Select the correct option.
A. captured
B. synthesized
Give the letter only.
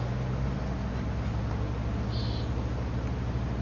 A